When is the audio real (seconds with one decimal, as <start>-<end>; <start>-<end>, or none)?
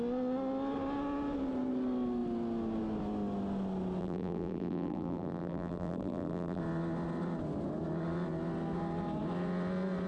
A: 0.0-4.0; 6.6-10.1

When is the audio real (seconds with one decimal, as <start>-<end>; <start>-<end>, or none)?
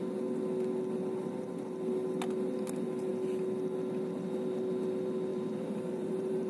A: 0.0-5.3